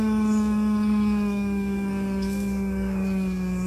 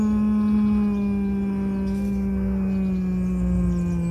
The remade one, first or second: first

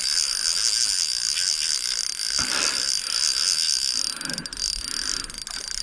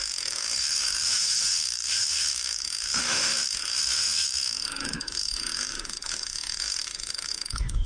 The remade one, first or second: second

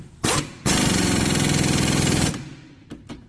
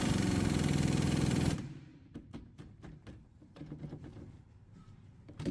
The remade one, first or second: second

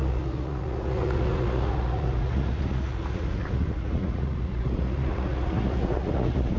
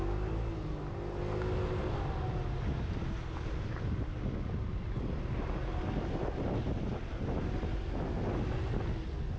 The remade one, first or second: first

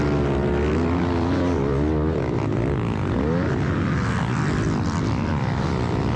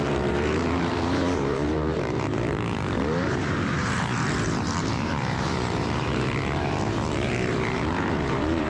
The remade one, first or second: second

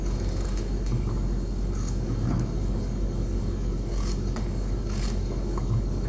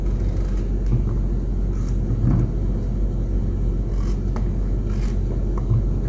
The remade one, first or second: first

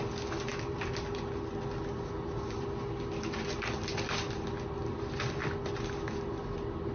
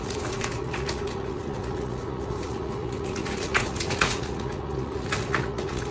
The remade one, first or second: second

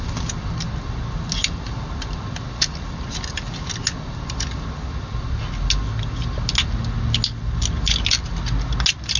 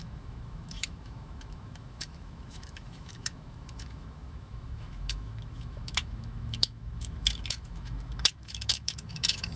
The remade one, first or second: second